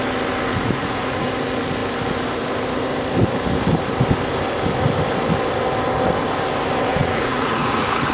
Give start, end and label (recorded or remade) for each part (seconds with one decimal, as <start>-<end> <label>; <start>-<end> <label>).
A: 0.0-0.5 recorded; 0.5-1.3 remade; 1.3-6.9 recorded; 6.9-8.1 remade